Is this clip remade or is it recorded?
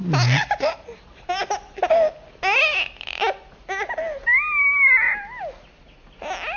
recorded